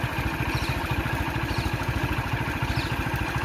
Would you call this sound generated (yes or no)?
no